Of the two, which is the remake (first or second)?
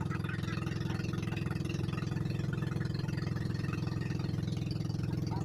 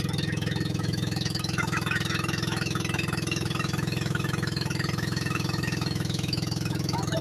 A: second